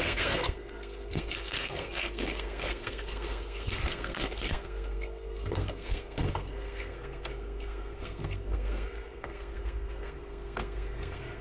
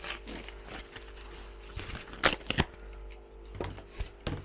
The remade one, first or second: first